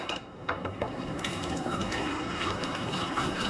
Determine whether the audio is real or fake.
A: fake